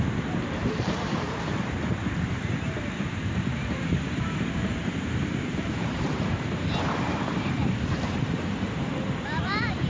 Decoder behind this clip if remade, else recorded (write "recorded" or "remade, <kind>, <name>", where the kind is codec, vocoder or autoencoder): remade, vocoder, BigVGAN v2